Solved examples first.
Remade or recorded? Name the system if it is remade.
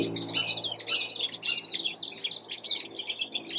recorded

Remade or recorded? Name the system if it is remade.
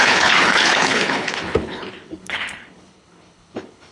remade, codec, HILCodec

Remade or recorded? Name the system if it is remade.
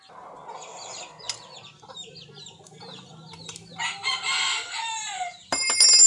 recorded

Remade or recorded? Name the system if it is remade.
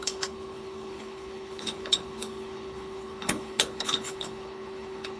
remade, codec, HILCodec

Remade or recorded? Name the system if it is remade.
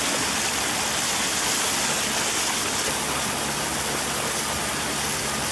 recorded